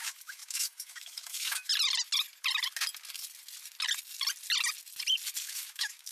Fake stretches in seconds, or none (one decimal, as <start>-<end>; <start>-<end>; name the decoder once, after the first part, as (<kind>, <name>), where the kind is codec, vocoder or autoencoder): 0.0-1.7 (autoencoder, DAC-VAE); 5.4-6.1